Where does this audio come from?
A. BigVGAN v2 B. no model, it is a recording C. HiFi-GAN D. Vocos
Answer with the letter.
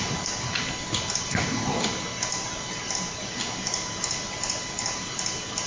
B